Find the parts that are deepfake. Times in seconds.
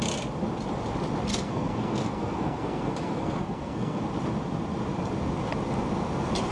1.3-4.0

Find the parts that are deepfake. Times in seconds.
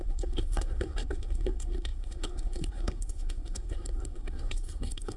0.0-5.2